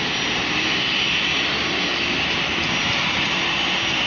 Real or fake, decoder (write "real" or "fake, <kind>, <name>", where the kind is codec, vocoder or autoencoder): real